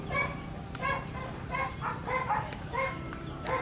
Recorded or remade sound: remade